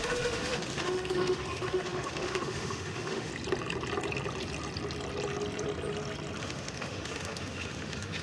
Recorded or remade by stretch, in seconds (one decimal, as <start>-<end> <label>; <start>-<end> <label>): 0.0-3.3 remade; 3.3-6.4 recorded; 6.4-8.2 remade